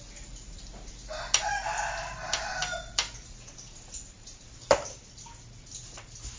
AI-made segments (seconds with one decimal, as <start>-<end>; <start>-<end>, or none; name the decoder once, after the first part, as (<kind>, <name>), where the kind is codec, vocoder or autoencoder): none